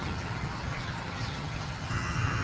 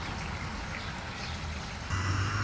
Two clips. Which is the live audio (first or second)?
second